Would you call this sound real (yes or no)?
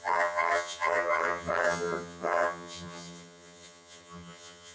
no